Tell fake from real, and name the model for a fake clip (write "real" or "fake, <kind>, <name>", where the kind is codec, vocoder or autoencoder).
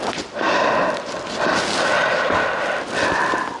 real